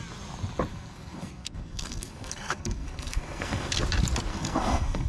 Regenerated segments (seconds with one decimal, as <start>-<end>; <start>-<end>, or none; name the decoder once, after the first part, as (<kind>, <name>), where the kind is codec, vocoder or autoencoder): 0.7-3.8 (codec, SNAC); 4.3-5.1